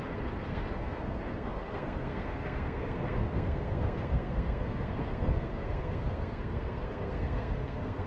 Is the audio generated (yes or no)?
yes